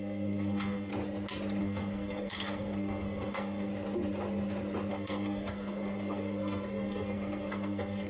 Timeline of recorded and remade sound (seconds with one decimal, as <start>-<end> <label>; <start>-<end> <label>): 0.0-0.9 remade; 0.9-1.6 recorded; 1.6-3.7 remade; 3.7-4.9 recorded; 4.9-8.1 remade